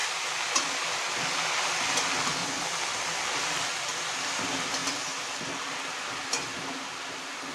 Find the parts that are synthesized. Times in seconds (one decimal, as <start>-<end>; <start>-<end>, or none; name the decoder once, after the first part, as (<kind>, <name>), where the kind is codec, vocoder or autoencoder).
2.4-3.8 (vocoder, BigVGAN v2)